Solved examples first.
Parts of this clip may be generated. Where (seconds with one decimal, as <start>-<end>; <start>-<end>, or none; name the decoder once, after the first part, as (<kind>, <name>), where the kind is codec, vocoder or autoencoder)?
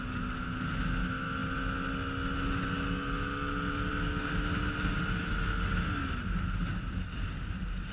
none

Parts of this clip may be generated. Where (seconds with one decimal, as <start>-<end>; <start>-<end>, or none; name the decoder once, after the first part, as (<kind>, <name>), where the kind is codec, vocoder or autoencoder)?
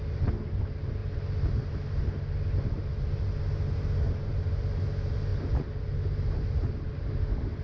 none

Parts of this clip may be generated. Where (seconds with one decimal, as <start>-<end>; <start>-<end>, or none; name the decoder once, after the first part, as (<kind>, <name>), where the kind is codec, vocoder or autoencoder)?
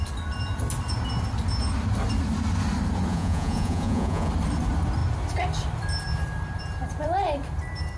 3.1-4.3 (vocoder, Vocos)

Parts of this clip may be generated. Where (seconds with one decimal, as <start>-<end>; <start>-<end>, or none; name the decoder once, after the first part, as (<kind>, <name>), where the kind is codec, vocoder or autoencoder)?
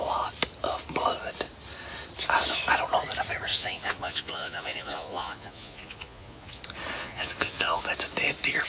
3.5-6.6 (vocoder, Vocos); 7.0-7.8